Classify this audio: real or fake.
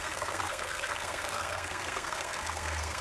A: fake